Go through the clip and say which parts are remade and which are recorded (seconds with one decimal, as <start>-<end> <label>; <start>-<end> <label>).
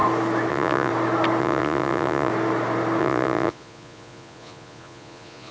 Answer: 0.0-0.5 recorded; 0.5-0.9 remade; 0.9-1.4 recorded; 1.4-2.3 remade; 2.3-3.0 recorded; 3.0-5.5 remade